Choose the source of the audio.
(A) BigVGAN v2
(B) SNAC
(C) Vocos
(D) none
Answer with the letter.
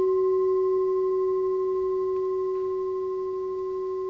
D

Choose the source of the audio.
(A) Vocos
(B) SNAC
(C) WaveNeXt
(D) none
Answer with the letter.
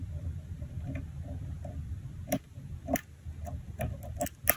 D